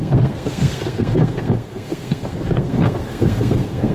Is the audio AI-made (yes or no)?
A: yes